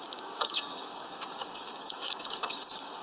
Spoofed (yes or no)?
yes